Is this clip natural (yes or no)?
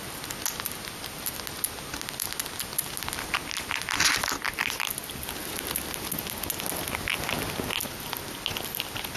yes